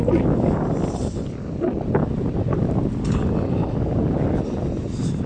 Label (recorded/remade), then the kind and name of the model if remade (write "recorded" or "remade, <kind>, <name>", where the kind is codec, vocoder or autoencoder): recorded